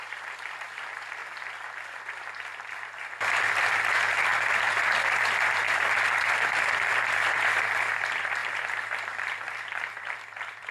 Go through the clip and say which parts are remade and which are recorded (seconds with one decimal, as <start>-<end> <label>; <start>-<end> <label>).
0.0-1.2 remade; 1.2-2.0 recorded; 2.0-4.3 remade; 4.3-5.5 recorded; 5.5-10.7 remade